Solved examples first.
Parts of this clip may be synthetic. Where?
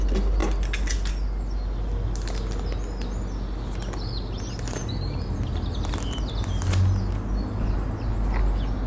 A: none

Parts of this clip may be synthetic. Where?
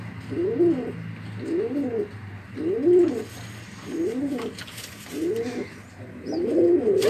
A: none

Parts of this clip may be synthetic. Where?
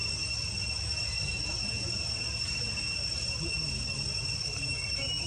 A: 4.4-5.3 (autoencoder, DAC-VAE)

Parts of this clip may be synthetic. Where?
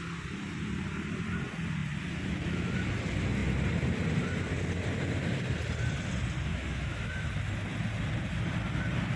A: 6.5-7.3 (autoencoder, DAC-VAE)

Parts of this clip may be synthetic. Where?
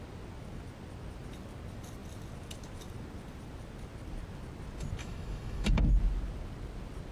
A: 5.0-5.7 (autoencoder, DAC-VAE)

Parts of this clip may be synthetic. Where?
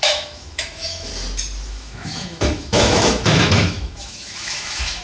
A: 0.0-1.1 (autoencoder, DAC-VAE); 1.7-5.0